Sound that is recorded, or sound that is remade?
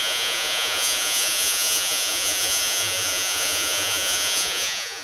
remade